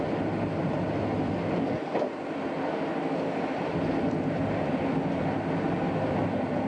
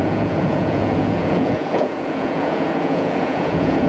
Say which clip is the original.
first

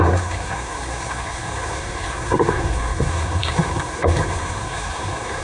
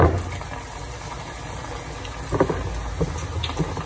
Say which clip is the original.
second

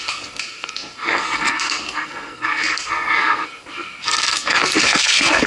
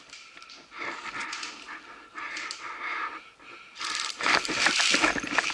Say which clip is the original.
second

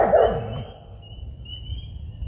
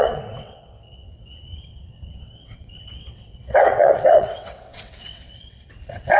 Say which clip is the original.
first